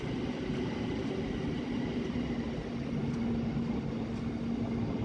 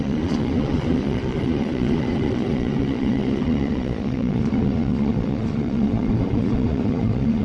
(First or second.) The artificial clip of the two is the second